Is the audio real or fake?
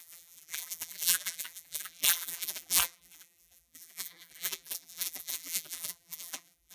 fake